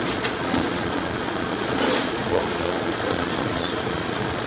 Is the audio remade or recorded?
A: remade